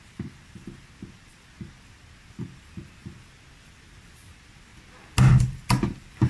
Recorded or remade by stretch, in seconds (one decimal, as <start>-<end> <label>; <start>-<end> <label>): 0.0-6.3 recorded